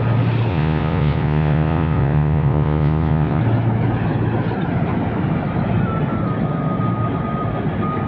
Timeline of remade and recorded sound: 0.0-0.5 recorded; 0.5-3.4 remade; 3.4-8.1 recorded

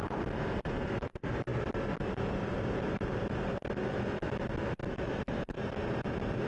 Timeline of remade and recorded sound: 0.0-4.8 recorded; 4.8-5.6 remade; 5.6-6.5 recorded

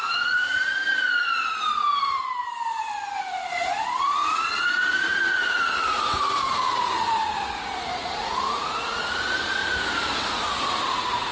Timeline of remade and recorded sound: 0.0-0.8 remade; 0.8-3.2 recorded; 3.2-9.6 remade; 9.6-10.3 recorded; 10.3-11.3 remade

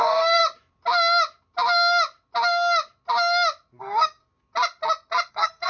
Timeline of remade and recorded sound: 0.0-0.4 remade; 0.4-3.8 recorded; 3.8-4.2 remade; 4.2-5.3 recorded; 5.3-5.7 remade

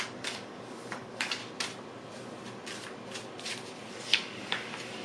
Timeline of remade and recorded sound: 0.0-1.4 remade; 1.4-3.9 recorded; 3.9-5.0 remade